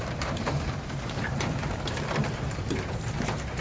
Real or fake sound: fake